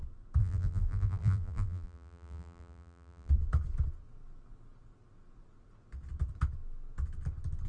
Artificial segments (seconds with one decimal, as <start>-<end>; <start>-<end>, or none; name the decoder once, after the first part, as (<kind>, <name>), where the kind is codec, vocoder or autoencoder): 0.4-3.3 (vocoder, BigVGAN v2)